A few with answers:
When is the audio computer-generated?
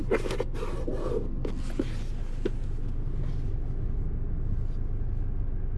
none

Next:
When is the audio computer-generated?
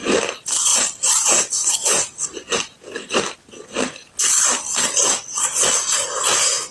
0.7-1.7 (vocoder, BigVGAN v2)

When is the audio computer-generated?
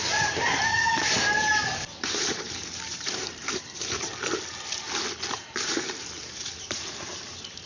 0.0-4.1 (vocoder, BigVGAN v2); 5.3-7.7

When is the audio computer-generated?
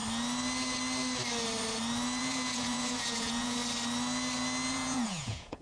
2.2-3.6 (vocoder, Vocos); 4.7-5.6